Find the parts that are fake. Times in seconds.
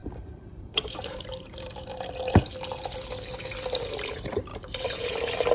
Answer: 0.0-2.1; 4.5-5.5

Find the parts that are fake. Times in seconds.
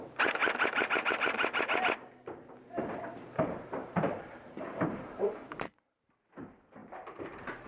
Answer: 0.0-0.4; 2.6-7.7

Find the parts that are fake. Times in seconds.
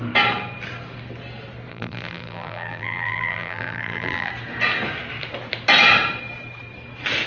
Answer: 1.7-4.3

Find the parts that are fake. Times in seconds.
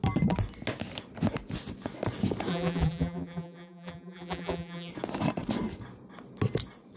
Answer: 2.5-4.9